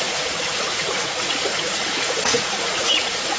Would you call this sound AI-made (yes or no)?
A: yes